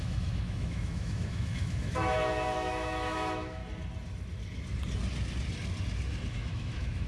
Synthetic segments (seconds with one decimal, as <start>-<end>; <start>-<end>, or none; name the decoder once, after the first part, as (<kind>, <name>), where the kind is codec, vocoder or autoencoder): 0.0-3.6 (autoencoder, DAC-VAE); 6.3-7.1